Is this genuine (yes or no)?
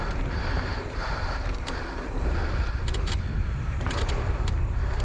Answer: no